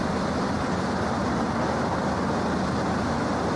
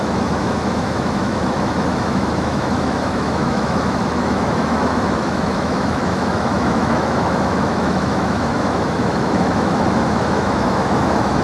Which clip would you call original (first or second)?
first